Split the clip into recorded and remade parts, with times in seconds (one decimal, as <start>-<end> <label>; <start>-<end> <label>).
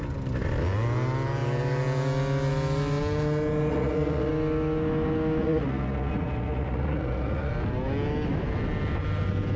0.0-3.7 recorded; 3.7-4.3 remade; 4.3-5.4 recorded; 5.4-7.5 remade; 7.5-9.6 recorded